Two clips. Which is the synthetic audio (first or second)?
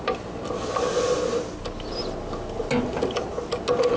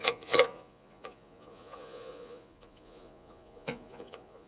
second